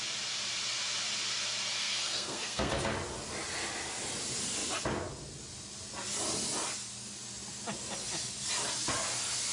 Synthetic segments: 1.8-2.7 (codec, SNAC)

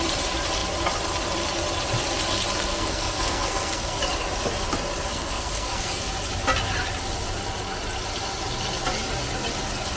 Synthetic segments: 2.7-4.0 (codec, SNAC); 5.1-6.0

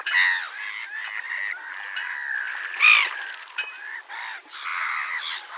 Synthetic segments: none

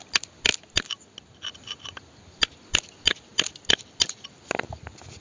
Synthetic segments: none

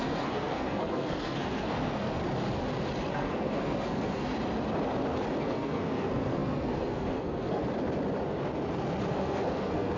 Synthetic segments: 0.0-2.2 (codec, SNAC); 3.1-4.3; 5.4-7.6; 9.1-10.0